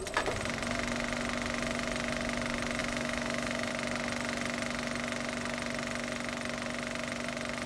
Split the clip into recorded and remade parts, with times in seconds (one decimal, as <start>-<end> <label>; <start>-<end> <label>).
0.0-2.8 recorded; 2.8-3.7 remade; 3.7-7.7 recorded